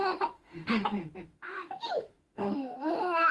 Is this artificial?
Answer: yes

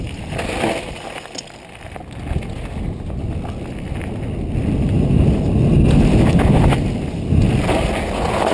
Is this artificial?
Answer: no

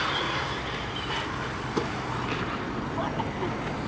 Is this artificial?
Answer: no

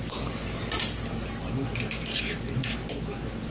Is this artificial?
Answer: no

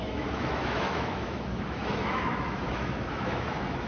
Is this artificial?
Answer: yes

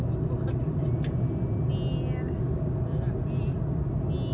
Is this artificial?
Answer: no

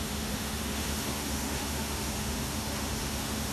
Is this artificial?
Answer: yes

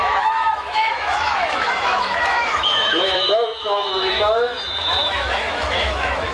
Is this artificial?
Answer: yes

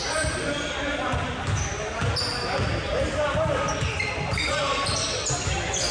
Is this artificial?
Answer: no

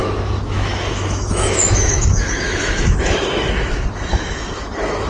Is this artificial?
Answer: yes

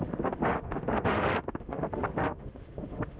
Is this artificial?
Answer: yes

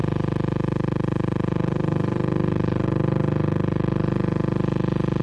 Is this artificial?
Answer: no